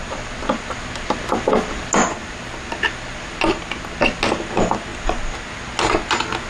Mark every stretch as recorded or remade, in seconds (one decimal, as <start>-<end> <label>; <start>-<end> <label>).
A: 0.0-6.5 recorded